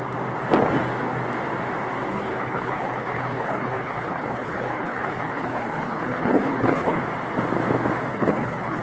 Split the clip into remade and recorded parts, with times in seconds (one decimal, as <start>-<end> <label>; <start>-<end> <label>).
0.0-2.1 recorded; 2.1-7.0 remade; 7.0-8.1 recorded; 8.1-8.8 remade